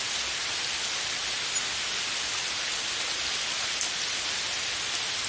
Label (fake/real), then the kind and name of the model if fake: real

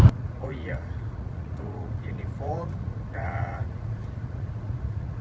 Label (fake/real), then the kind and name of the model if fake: fake, vocoder, Vocos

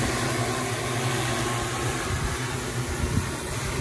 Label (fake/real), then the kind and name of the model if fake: real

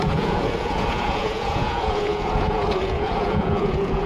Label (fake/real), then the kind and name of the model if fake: fake, vocoder, Vocos